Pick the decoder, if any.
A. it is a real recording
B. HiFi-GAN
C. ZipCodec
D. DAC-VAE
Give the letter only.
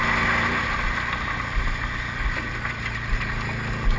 A